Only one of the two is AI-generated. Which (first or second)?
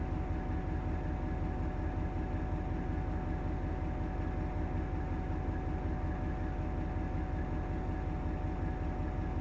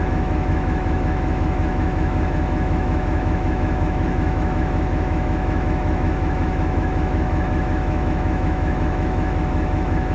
second